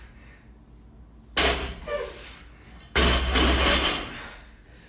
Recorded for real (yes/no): yes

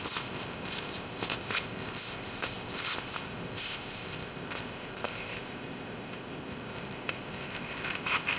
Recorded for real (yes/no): no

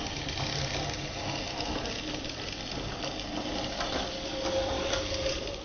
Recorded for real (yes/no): yes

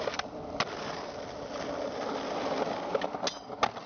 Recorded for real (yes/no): yes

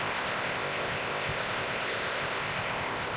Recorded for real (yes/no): no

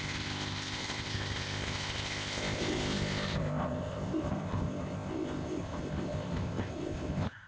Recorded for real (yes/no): no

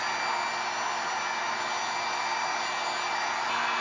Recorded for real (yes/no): yes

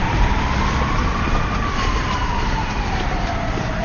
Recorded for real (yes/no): yes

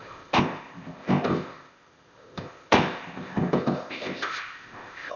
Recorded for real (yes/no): no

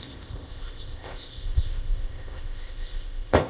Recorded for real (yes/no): no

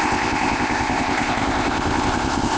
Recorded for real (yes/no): no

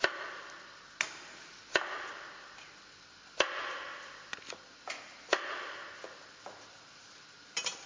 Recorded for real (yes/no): yes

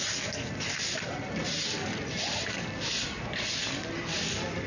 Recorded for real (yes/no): yes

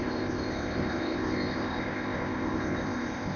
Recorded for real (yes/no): no